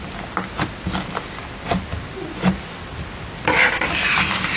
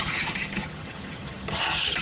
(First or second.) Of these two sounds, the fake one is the second